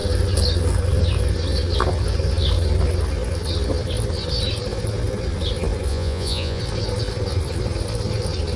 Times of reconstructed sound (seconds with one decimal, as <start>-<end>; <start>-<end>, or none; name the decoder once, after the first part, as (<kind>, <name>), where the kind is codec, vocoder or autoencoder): 5.9-6.6 (vocoder, Vocos)